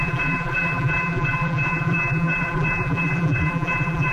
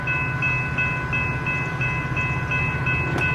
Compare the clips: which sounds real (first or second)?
second